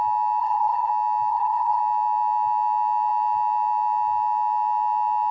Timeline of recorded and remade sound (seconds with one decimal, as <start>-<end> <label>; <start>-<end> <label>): 0.0-0.4 recorded; 0.4-0.9 remade; 0.9-1.3 recorded; 1.3-1.8 remade; 1.8-5.3 recorded